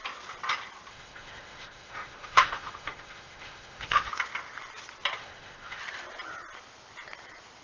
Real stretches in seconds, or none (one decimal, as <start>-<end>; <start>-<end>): 0.0-0.9; 4.1-5.2; 5.8-7.6